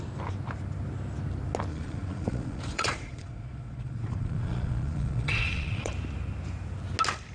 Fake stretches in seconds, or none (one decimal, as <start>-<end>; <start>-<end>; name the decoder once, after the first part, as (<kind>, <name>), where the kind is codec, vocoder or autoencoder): 1.7-5.9 (vocoder, Vocos)

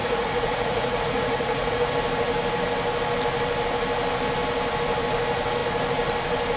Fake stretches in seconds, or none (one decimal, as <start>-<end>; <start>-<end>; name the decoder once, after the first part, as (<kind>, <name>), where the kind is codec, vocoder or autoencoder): 0.0-1.9 (vocoder, Vocos)

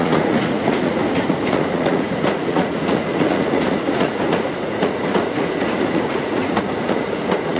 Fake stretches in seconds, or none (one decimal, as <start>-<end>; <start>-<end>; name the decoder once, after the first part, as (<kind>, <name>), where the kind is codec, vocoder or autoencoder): 0.0-7.6 (vocoder, Vocos)

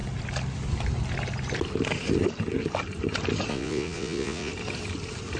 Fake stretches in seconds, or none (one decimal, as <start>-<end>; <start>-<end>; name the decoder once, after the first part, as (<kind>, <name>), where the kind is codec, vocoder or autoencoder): 3.5-4.5 (vocoder, Vocos)

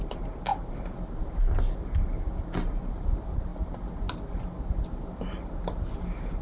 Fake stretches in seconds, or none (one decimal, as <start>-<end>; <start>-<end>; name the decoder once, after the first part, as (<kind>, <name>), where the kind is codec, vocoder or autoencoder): none

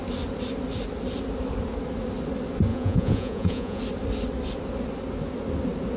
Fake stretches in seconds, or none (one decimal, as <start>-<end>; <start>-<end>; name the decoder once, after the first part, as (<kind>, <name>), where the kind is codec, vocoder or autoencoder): 2.7-3.8 (vocoder, Vocos)

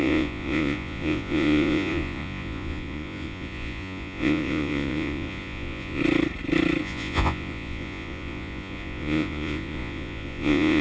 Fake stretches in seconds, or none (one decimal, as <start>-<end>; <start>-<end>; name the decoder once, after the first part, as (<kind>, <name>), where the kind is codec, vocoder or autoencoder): 0.0-6.0 (vocoder, Vocos); 6.8-10.8